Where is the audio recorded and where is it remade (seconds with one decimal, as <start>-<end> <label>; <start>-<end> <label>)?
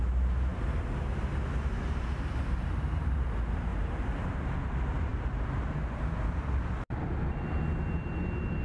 0.0-0.5 recorded; 0.5-3.1 remade; 3.1-3.7 recorded; 3.7-4.4 remade; 4.4-8.6 recorded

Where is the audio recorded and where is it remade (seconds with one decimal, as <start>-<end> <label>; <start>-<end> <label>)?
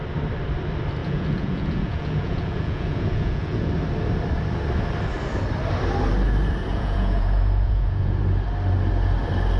0.0-1.0 recorded; 1.0-3.7 remade; 3.7-6.7 recorded; 6.7-8.2 remade; 8.2-9.6 recorded